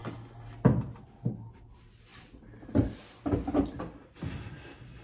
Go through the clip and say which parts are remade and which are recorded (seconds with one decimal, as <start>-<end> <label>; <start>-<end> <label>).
0.0-5.0 recorded